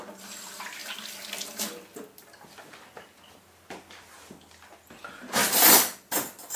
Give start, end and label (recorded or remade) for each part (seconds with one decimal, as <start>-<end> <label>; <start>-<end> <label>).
0.0-0.8 recorded; 0.8-2.0 remade; 2.0-5.4 recorded; 5.4-6.6 remade